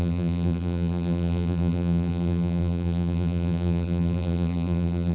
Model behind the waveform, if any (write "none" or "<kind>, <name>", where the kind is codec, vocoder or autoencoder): vocoder, BigVGAN v2